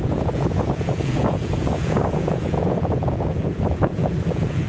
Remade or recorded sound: remade